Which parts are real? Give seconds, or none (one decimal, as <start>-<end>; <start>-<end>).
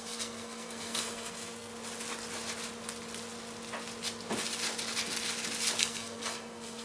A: 1.7-5.8